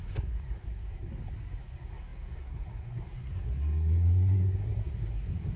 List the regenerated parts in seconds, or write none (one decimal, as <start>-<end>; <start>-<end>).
0.0-1.1; 1.6-5.6